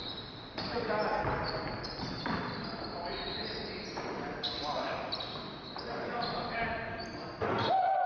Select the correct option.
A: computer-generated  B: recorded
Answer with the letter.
A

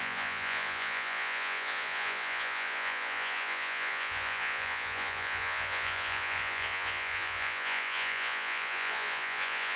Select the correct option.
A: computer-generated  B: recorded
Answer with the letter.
A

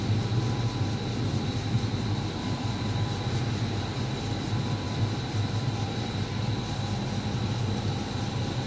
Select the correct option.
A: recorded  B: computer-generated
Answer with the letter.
B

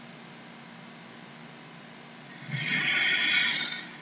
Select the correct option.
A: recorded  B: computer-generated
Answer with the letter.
A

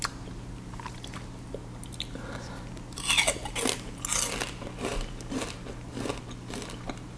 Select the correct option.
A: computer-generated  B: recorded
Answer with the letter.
B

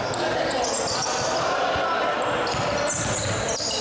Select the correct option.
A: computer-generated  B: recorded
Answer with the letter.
B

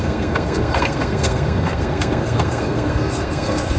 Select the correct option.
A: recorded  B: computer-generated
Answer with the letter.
B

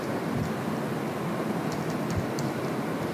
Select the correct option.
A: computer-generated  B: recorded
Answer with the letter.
B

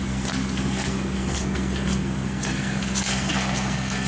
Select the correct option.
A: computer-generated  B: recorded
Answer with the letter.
A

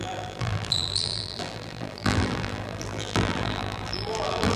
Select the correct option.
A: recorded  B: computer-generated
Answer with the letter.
B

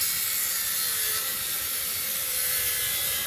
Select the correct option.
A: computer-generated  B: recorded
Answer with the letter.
A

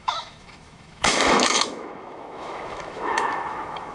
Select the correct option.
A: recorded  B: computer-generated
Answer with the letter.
B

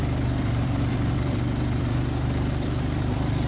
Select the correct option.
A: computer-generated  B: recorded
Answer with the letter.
A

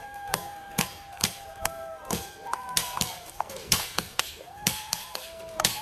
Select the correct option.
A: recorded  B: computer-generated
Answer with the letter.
B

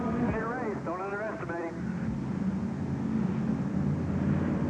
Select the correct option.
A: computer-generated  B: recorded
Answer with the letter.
B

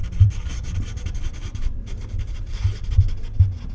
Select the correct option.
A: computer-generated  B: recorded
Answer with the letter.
A